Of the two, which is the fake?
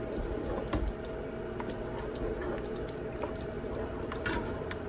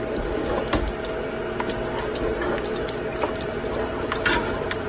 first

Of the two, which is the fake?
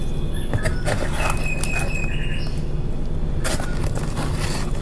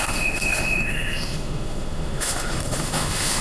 second